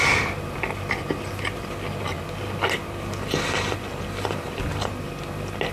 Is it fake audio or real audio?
real